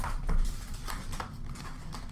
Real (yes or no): no